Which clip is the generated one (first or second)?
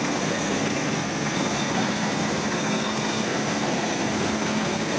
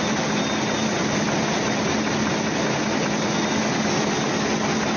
first